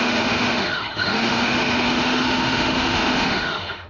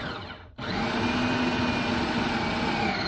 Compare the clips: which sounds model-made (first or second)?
first